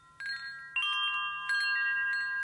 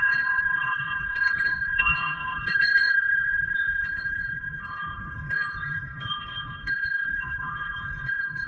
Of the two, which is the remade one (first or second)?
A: second